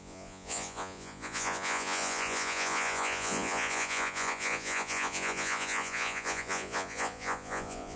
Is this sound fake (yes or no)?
yes